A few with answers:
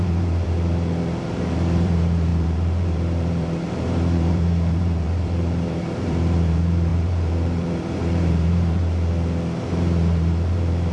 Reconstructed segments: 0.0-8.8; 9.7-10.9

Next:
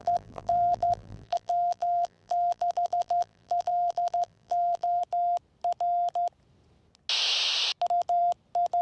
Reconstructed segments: 0.0-5.0

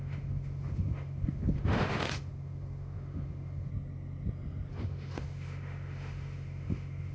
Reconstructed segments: 0.0-3.7; 4.7-7.1